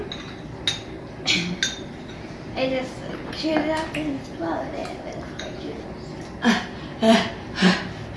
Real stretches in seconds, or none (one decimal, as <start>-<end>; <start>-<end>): 0.0-8.2